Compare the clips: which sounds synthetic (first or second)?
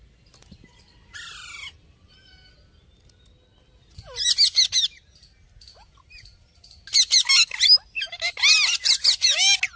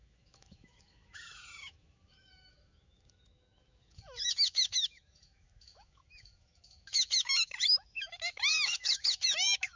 second